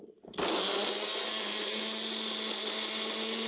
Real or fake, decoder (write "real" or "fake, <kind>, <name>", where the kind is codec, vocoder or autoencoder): real